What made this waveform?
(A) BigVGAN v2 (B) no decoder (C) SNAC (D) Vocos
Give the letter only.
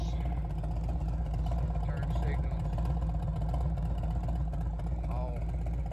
B